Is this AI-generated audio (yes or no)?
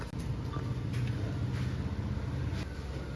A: no